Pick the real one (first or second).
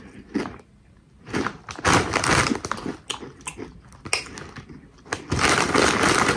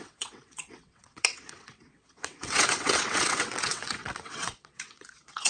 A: first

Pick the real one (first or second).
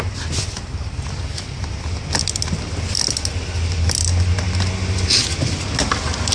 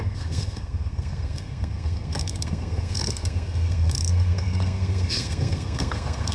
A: first